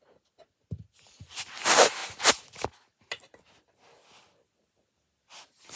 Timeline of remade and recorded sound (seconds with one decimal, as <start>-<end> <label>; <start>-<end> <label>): 0.0-5.8 recorded